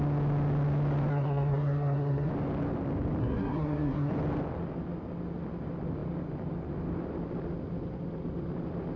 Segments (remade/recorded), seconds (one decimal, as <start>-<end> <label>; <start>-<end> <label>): 0.0-1.1 recorded; 1.1-2.3 remade; 2.3-3.2 recorded; 3.2-4.1 remade; 4.1-9.0 recorded